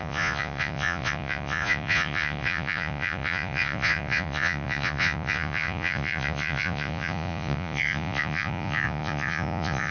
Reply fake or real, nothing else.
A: fake